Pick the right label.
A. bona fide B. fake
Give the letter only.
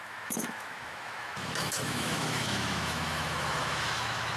B